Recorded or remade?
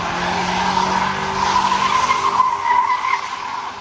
recorded